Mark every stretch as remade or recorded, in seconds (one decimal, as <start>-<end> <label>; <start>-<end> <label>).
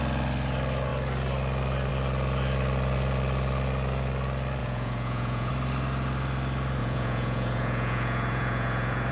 0.0-4.6 recorded; 4.6-5.5 remade; 5.5-6.8 recorded; 6.8-9.1 remade